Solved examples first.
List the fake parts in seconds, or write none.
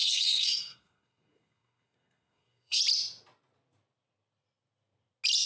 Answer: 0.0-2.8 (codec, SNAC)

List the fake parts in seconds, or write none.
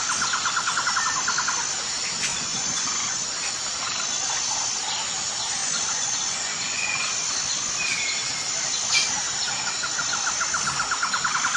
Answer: 2.3-3.5 (vocoder, Vocos); 5.6-7.1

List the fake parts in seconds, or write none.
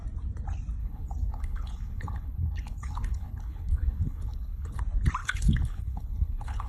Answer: 0.8-4.8 (codec, HILCodec); 5.2-6.7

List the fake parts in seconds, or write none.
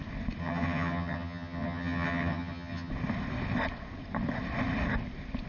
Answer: 0.4-2.9 (vocoder, HiFi-GAN)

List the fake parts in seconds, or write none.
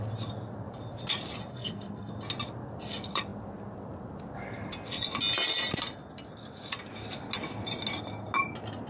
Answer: 1.5-2.1 (codec, SNAC)